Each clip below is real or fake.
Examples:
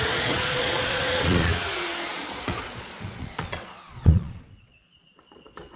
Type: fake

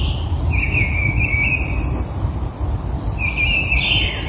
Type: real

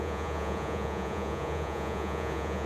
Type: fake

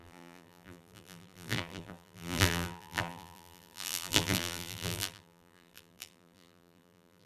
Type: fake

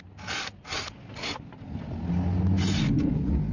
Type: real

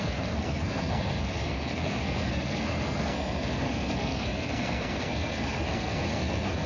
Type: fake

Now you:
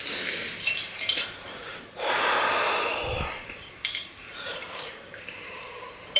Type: fake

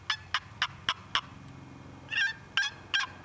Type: real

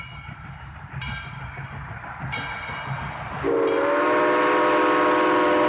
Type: real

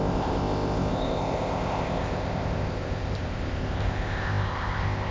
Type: fake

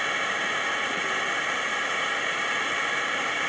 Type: real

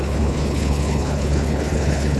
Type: fake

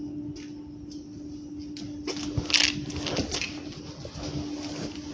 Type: real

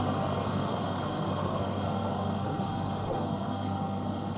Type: fake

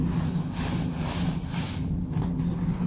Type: real